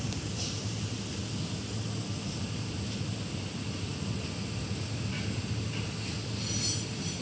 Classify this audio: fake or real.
real